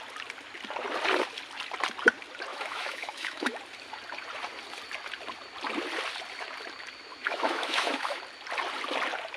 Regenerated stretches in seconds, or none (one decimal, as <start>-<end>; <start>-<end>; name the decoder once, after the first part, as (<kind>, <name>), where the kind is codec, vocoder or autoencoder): 2.5-3.6 (autoencoder, DAC-VAE); 7.1-8.2